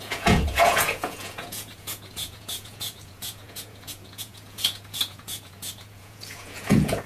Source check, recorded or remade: remade